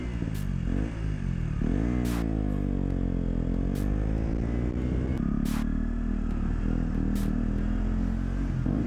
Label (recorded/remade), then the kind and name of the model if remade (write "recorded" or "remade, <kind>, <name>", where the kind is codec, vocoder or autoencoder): recorded